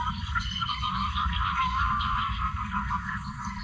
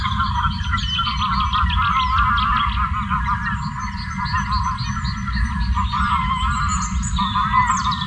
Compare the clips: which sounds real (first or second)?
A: second